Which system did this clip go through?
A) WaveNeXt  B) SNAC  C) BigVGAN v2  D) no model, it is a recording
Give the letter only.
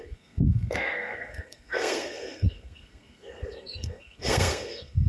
B